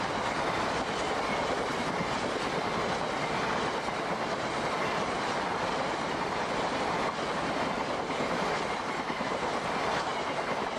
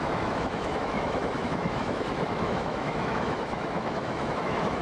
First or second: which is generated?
second